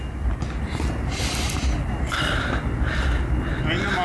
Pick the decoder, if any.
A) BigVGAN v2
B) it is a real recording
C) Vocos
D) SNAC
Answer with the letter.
B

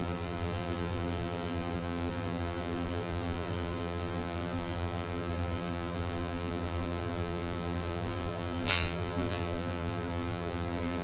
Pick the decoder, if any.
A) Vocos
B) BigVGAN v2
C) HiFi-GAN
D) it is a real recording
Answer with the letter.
B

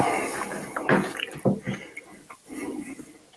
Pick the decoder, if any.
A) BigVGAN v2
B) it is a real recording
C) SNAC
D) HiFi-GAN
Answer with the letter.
B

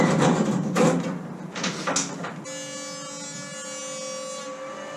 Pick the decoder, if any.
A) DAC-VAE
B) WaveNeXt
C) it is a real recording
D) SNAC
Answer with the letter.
C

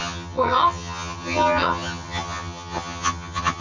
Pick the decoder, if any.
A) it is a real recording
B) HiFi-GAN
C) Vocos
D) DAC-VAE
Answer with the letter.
B